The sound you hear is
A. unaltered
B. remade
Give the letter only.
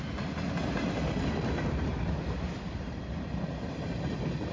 A